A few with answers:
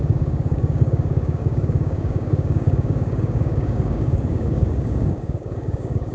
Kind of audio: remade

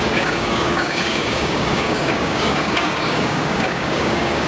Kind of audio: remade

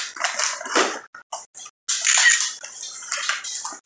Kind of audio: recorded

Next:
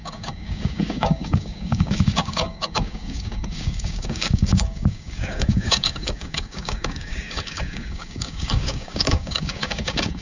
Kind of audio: remade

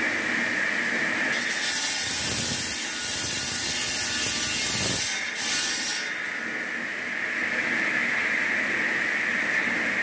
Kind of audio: recorded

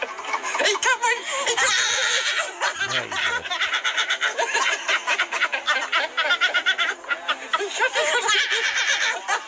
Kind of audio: recorded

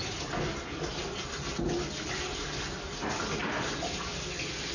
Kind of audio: recorded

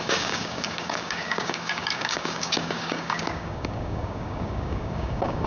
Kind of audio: remade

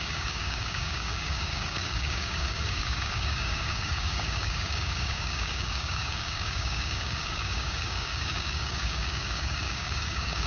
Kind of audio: remade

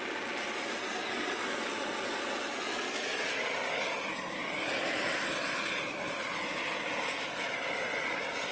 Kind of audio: recorded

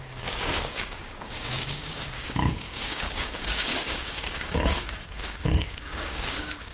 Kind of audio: remade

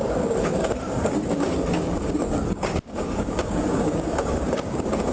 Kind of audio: remade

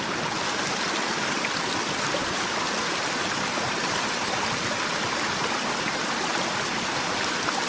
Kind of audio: recorded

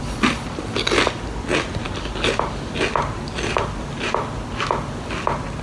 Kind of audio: recorded